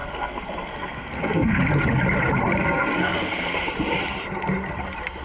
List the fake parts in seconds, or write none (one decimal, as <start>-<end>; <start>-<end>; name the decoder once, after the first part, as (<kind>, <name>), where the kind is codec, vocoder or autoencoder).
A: 0.0-1.6 (codec, SNAC); 2.6-3.7